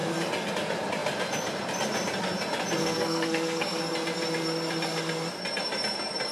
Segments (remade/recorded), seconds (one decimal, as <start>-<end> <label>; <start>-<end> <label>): 0.0-2.8 recorded; 2.8-3.8 remade; 3.8-6.3 recorded